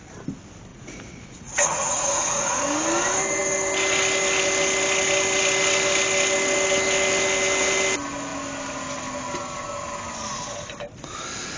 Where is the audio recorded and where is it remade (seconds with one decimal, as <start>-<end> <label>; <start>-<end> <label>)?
0.0-0.7 recorded; 0.7-2.6 remade; 2.6-11.6 recorded